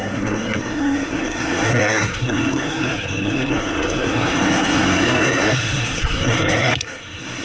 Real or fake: fake